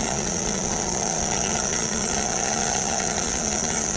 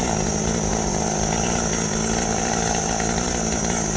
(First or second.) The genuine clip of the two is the second